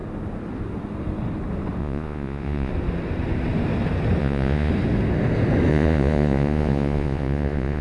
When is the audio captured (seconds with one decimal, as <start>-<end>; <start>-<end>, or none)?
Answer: 0.0-1.8; 2.7-4.2; 4.7-5.7